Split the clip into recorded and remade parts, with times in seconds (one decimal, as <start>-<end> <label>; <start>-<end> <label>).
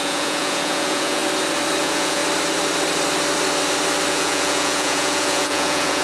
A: 0.0-1.2 remade; 1.2-1.8 recorded; 1.8-2.2 remade; 2.2-4.1 recorded; 4.1-6.0 remade